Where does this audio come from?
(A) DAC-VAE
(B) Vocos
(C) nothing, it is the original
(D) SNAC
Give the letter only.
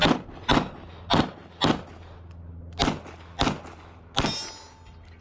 C